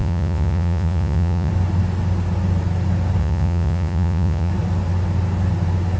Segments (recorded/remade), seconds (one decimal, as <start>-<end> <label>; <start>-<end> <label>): 0.0-1.5 remade; 1.5-3.2 recorded; 3.2-4.5 remade; 4.5-6.0 recorded